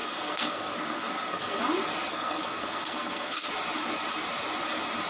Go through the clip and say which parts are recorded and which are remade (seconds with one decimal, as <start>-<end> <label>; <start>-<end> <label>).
0.0-1.6 remade; 1.6-2.1 recorded; 2.1-3.5 remade; 3.5-5.1 recorded